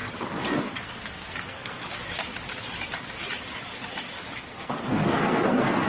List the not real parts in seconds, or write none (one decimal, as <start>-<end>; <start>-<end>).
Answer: 0.6-1.8; 4.4-5.9